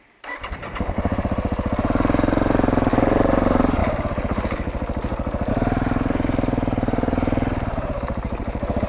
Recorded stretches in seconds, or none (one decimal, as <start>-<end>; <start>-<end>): 3.8-5.5